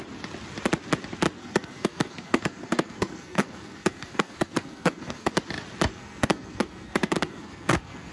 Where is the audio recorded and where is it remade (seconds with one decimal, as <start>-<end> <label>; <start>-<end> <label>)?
0.0-1.4 recorded; 1.4-5.3 remade; 5.3-5.9 recorded; 5.9-8.1 remade